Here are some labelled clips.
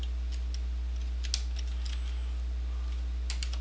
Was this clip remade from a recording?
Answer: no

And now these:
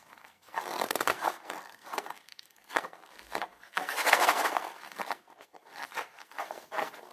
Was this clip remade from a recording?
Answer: yes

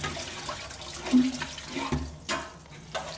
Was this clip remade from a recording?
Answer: no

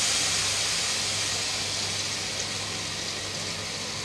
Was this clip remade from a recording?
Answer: no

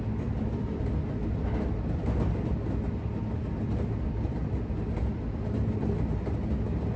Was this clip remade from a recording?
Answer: no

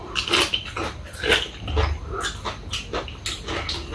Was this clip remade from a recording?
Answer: no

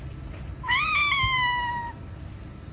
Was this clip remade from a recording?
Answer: no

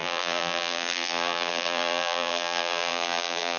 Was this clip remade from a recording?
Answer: yes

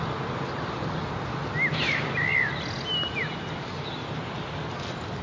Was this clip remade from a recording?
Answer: no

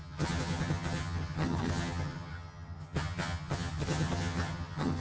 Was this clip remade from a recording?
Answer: yes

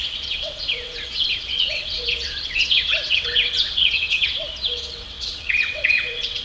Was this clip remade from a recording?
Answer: yes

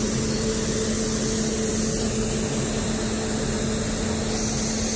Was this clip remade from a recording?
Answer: no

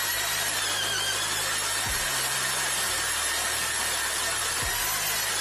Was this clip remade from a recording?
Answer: no